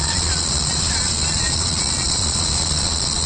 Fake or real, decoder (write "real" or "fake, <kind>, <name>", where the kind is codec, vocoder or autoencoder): fake, vocoder, Vocos